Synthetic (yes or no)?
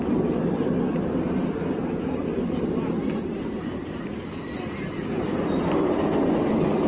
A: no